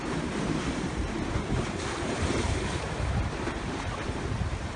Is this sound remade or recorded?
remade